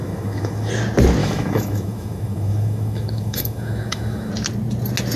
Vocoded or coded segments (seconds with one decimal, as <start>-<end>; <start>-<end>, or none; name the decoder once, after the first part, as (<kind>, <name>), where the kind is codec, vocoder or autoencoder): 0.0-0.7 (autoencoder, DAC-VAE); 1.2-4.3